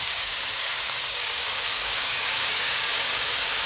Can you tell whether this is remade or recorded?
remade